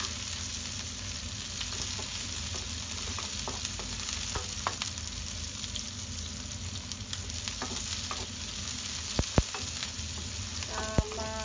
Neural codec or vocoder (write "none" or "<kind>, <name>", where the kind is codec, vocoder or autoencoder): none